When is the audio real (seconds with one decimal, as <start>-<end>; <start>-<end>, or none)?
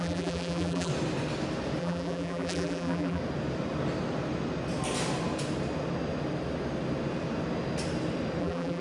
0.9-1.8; 3.2-8.4